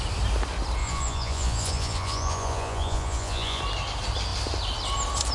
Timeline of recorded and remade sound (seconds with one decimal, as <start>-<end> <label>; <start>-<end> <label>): 0.0-0.8 recorded; 0.8-3.6 remade; 3.6-5.3 recorded